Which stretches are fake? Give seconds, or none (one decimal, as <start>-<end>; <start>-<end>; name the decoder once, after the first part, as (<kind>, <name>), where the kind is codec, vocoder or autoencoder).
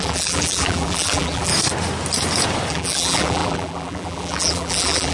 0.0-1.5 (vocoder, BigVGAN v2); 2.7-5.1